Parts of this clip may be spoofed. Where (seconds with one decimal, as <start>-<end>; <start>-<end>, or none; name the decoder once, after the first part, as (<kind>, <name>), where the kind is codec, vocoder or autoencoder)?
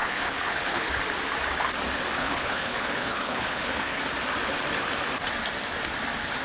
0.0-0.9 (codec, HILCodec); 2.2-4.0